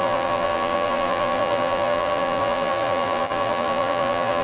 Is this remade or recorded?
remade